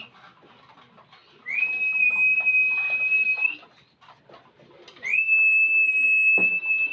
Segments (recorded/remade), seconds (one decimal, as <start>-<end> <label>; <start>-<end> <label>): 0.0-6.9 recorded